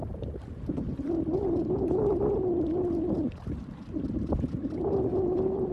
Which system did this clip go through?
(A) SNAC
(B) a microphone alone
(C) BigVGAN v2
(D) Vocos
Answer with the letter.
B